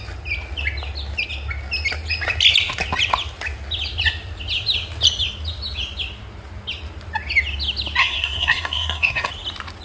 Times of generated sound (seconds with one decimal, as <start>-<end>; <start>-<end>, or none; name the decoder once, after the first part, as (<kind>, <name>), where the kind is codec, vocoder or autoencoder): 8.0-9.3 (codec, SNAC)